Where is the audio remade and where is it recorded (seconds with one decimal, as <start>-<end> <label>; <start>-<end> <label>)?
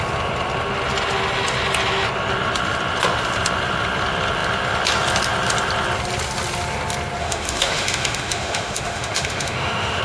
0.0-7.2 recorded; 7.2-10.0 remade